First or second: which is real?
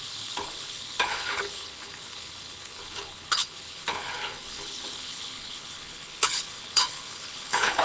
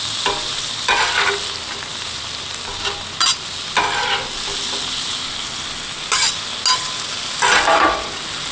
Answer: second